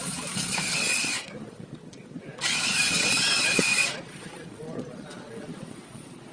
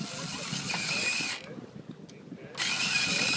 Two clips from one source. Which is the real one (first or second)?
second